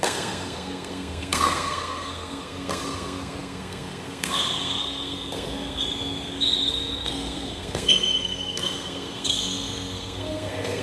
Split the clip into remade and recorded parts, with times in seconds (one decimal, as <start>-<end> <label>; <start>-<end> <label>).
0.0-10.8 remade